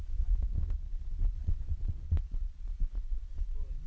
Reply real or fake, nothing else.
fake